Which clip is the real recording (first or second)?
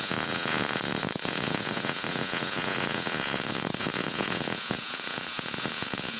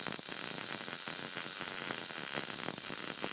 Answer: second